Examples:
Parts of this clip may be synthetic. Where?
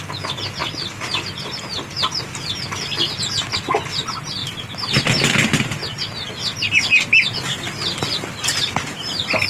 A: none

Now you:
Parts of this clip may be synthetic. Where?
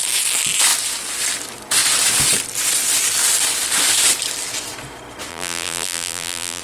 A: 5.3-6.6 (vocoder, BigVGAN v2)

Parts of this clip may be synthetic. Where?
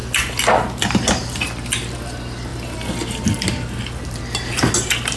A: 0.0-1.1 (vocoder, BigVGAN v2)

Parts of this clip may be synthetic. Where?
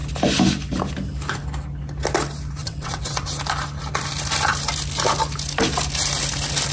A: 2.6-3.2 (vocoder, WaveNeXt)